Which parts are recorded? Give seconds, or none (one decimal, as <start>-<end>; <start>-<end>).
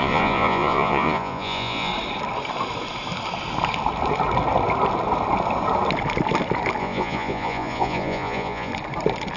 1.9-6.8; 8.7-9.4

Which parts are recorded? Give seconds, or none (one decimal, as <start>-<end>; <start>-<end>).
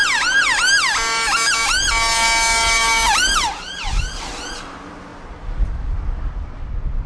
0.0-7.1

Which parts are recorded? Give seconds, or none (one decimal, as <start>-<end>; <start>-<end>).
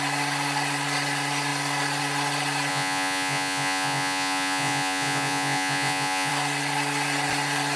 0.0-2.7; 6.3-7.8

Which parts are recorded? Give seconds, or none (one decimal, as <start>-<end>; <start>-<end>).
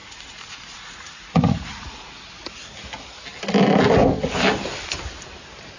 2.1-5.8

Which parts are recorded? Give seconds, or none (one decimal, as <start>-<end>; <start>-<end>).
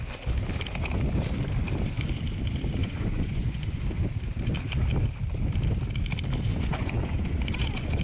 0.0-2.8; 3.8-6.5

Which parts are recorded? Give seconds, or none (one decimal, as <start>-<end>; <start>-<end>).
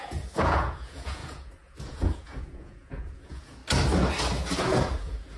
3.6-4.6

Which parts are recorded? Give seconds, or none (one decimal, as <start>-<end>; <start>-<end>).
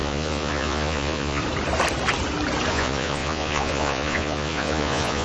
1.4-2.7